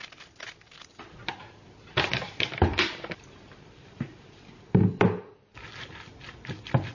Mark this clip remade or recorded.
recorded